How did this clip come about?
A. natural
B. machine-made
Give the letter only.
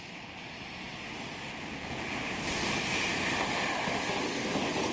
A